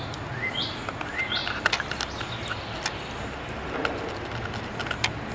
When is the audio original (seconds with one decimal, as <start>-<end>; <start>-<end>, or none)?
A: 0.0-5.3